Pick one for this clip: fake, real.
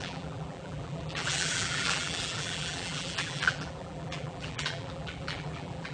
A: fake